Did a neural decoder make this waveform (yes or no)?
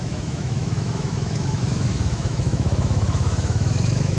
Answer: yes